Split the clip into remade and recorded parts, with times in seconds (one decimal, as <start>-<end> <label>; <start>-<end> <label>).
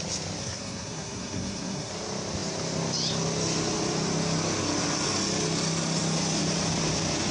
0.0-0.4 recorded; 0.4-1.9 remade; 1.9-7.3 recorded